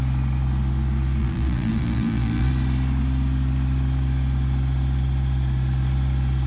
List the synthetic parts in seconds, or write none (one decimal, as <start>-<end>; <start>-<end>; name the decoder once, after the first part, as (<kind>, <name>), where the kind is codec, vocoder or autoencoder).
1.2-2.5 (vocoder, BigVGAN v2)